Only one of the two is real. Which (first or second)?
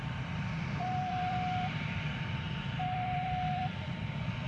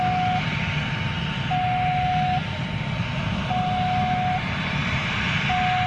second